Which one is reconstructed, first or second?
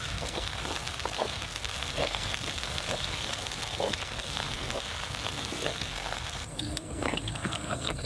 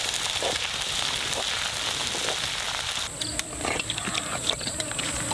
first